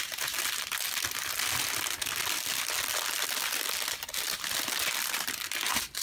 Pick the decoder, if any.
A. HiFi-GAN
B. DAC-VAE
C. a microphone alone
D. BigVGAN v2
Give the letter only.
C